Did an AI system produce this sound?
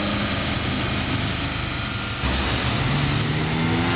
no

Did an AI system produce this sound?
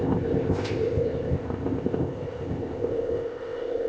yes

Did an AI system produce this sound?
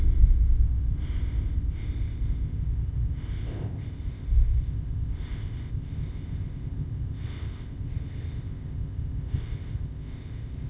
yes